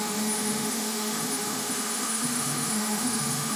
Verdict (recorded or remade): remade